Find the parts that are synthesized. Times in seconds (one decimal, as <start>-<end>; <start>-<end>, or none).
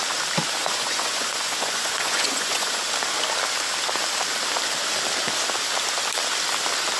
0.6-2.8